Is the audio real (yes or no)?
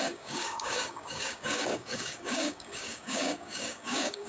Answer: no